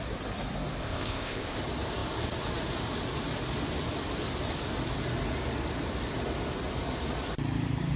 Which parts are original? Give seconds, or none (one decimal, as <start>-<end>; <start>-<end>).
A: 0.0-0.8; 1.6-8.0